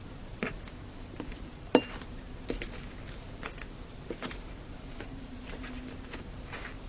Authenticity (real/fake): real